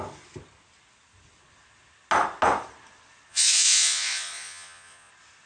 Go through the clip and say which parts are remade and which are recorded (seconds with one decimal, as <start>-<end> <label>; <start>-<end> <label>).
0.0-3.3 recorded; 3.3-5.1 remade; 5.1-5.5 recorded